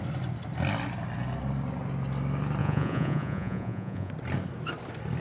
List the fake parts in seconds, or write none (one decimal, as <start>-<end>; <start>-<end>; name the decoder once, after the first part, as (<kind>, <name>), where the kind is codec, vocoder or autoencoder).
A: 2.6-4.1 (vocoder, Vocos)